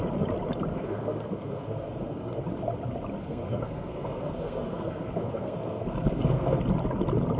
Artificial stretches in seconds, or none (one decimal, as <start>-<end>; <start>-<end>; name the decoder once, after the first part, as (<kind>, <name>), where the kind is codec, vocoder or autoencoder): 0.7-2.4 (codec, SNAC); 3.2-6.6